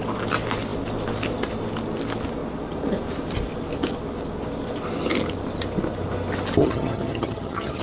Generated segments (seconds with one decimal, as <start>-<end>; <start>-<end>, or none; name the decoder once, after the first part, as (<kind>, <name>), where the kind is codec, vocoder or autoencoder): 6.6-7.8 (vocoder, HiFi-GAN)